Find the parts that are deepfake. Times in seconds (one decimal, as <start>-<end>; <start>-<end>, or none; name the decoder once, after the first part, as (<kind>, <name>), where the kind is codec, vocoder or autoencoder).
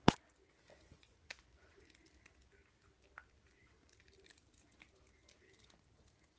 0.7-1.8 (vocoder, Vocos)